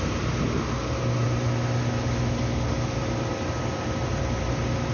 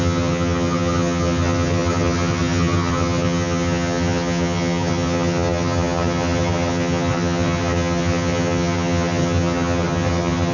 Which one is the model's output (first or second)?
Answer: second